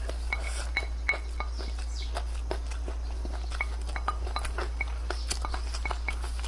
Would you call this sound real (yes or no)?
yes